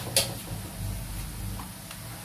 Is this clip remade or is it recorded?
recorded